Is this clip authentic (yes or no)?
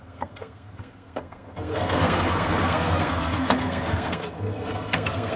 no